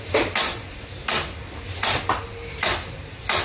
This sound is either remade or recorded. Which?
remade